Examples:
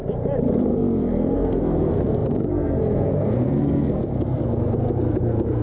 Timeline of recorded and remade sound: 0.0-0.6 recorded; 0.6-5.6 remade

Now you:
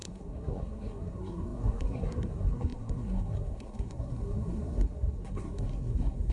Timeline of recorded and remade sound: 0.0-6.3 remade

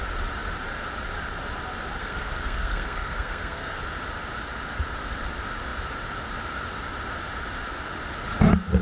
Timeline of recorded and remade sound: 0.0-2.0 recorded; 2.0-3.8 remade; 3.8-8.8 recorded

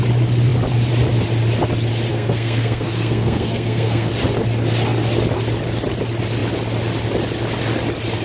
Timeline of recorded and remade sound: 0.0-2.1 recorded; 2.1-4.1 remade; 4.1-8.2 recorded